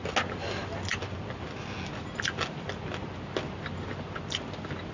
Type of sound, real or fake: real